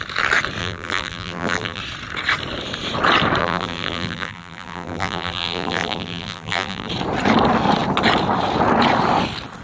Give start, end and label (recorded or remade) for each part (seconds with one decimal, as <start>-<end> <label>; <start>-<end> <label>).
0.0-0.6 recorded; 0.6-1.8 remade; 1.8-3.4 recorded; 3.4-6.9 remade; 6.9-9.6 recorded